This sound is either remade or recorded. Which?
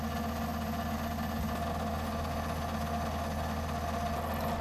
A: recorded